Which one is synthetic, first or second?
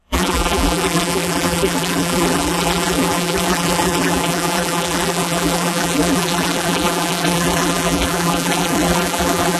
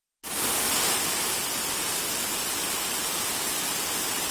first